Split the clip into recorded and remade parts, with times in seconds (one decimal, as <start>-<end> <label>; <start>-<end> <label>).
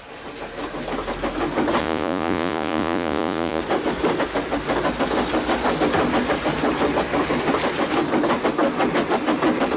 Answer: 0.0-1.8 recorded; 1.8-3.6 remade; 3.6-9.8 recorded